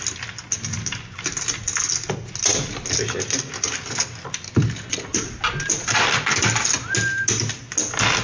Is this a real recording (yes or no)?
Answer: yes